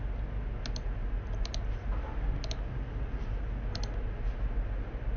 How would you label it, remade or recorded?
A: recorded